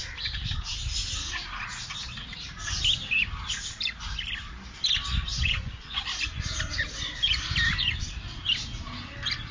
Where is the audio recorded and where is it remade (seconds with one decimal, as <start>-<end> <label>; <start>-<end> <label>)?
0.0-5.1 recorded; 5.1-6.0 remade; 6.0-9.5 recorded